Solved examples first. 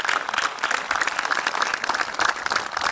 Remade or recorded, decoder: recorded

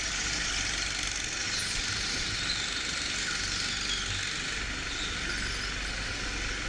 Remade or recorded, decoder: recorded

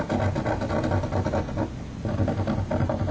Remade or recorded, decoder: recorded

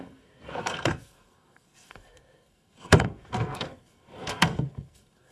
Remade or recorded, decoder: remade, codec, SNAC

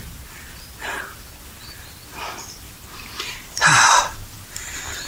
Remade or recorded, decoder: remade, vocoder, BigVGAN v2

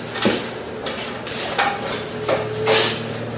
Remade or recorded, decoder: recorded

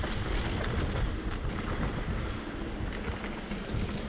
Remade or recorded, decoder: recorded